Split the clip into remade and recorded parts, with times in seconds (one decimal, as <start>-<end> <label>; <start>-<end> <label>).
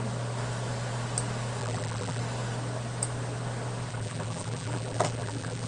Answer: 0.0-1.6 recorded; 1.6-2.2 remade; 2.2-3.9 recorded; 3.9-5.7 remade